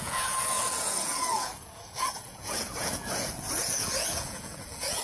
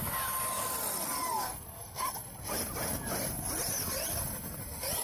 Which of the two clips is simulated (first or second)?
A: first